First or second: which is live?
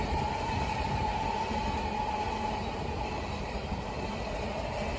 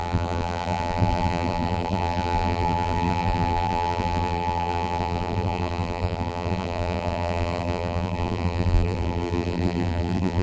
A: first